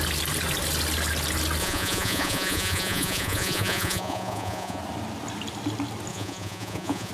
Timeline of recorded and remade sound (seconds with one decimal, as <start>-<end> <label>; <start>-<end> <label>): 0.0-1.6 recorded; 1.6-4.8 remade; 4.8-6.1 recorded; 6.1-7.1 remade